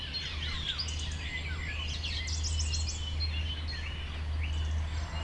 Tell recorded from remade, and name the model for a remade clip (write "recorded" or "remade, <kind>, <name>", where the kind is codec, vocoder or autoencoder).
recorded